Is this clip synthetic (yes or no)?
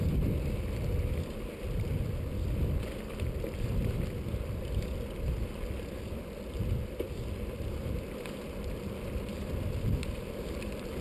no